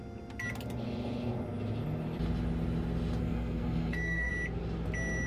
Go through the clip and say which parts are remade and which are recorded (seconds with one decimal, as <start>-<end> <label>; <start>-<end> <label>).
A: 0.0-3.2 recorded; 3.2-4.3 remade; 4.3-5.3 recorded